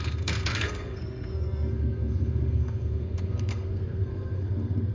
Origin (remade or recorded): remade